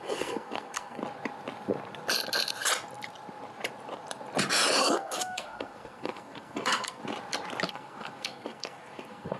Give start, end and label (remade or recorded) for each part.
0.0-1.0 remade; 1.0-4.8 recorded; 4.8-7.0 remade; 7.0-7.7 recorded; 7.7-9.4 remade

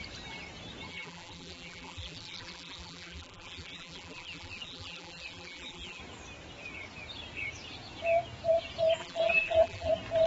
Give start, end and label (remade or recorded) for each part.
0.0-0.9 recorded; 0.9-6.0 remade; 6.0-9.0 recorded; 9.0-9.9 remade; 9.9-10.3 recorded

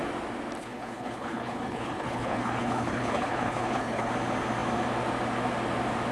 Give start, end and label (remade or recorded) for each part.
0.0-0.6 recorded; 0.6-4.1 remade; 4.1-6.1 recorded

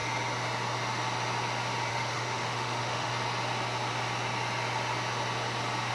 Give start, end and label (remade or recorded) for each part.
0.0-1.9 recorded; 1.9-3.1 remade; 3.1-5.9 recorded

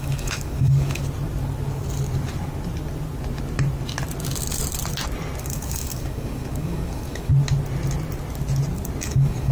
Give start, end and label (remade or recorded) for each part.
0.0-1.0 remade; 1.0-5.4 recorded; 5.4-7.3 remade; 7.3-9.0 recorded; 9.0-9.5 remade

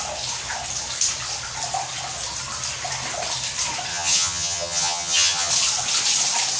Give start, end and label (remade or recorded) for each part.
0.0-3.9 recorded; 3.9-5.5 remade; 5.5-6.6 recorded